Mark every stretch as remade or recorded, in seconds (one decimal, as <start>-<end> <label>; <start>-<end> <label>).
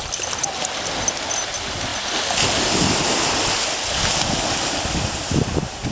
0.0-5.9 recorded